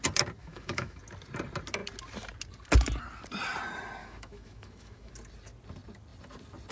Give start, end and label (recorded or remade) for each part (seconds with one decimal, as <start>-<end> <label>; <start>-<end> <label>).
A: 0.0-0.4 recorded; 0.4-1.0 remade; 1.0-4.0 recorded; 4.0-5.1 remade; 5.1-6.7 recorded